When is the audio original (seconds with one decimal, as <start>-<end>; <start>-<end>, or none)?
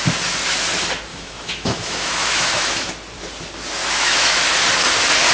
0.0-1.1; 2.9-3.8; 4.4-5.3